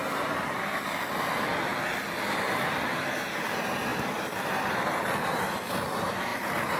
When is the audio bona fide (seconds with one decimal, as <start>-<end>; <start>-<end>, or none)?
0.0-3.9; 5.0-6.8